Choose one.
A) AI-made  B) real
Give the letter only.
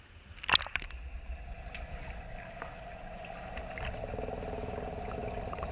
B